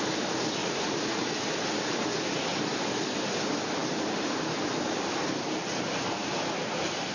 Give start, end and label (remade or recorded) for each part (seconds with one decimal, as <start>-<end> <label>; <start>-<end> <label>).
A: 0.0-0.6 recorded; 0.6-1.3 remade; 1.3-7.1 recorded